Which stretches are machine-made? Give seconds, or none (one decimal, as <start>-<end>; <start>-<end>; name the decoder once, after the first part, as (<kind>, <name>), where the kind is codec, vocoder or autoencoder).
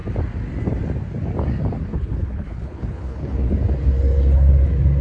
1.9-3.5 (codec, HILCodec)